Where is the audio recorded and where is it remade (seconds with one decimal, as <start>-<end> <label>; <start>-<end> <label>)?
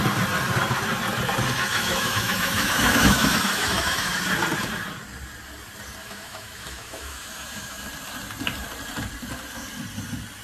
0.0-1.7 recorded; 1.7-4.2 remade; 4.2-6.0 recorded; 6.0-7.8 remade; 7.8-10.4 recorded